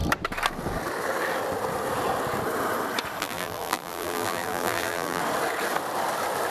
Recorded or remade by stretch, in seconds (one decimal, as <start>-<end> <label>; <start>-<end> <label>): 0.0-3.2 recorded; 3.2-5.2 remade; 5.2-6.5 recorded

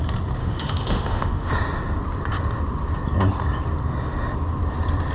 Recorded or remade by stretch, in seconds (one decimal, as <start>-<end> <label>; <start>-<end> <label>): 0.0-0.4 recorded; 0.4-1.5 remade; 1.5-5.1 recorded

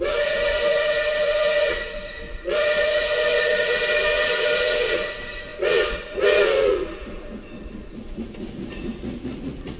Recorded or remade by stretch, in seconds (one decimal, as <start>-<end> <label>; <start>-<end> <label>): 0.0-9.8 remade

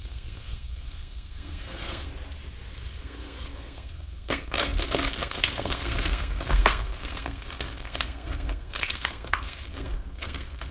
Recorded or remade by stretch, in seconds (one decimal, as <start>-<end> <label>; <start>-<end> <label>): 0.0-2.1 remade; 2.1-2.7 recorded; 2.7-10.7 remade

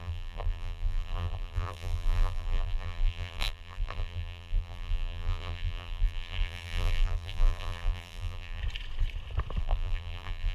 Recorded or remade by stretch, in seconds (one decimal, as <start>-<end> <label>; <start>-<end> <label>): 0.0-8.6 remade; 8.6-9.6 recorded; 9.6-10.5 remade